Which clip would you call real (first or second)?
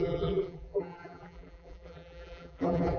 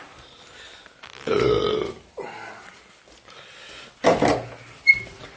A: second